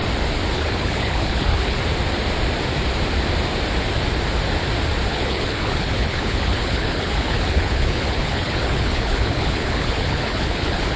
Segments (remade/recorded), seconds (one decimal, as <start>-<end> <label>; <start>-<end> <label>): 0.0-0.5 recorded; 0.5-1.8 remade; 1.8-5.1 recorded; 5.1-11.0 remade